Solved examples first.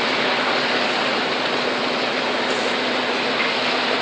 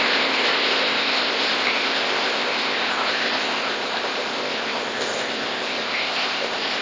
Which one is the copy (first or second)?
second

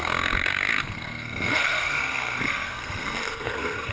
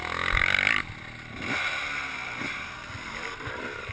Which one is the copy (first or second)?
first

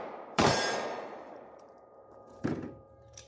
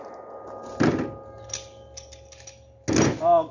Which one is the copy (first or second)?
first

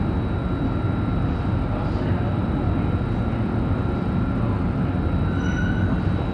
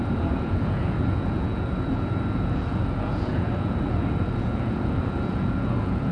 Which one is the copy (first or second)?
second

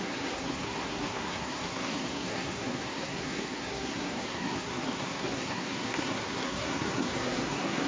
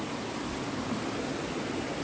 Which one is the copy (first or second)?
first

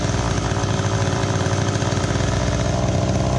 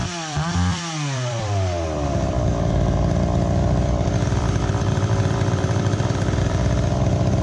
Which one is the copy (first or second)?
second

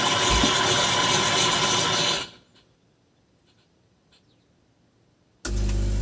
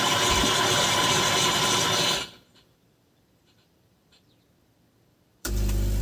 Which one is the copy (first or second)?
second